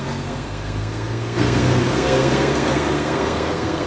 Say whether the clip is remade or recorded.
remade